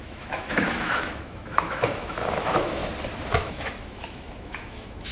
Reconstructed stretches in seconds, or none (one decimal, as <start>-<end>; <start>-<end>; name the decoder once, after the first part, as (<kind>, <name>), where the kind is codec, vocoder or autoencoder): 0.0-2.8 (autoencoder, DAC-VAE); 3.3-5.1